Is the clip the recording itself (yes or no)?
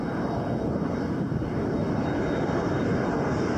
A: yes